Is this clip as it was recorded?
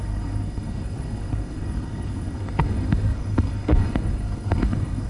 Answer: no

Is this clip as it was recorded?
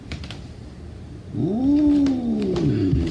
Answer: yes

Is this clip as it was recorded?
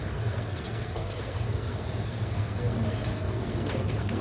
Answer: no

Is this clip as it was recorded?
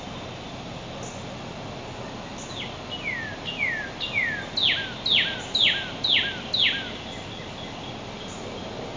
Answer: yes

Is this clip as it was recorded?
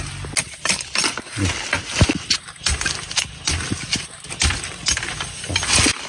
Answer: yes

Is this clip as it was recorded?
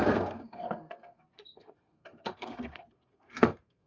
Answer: no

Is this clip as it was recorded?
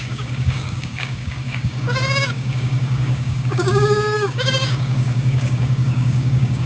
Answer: no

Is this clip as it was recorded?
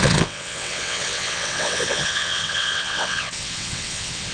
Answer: no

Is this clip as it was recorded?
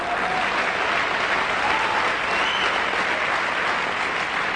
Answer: yes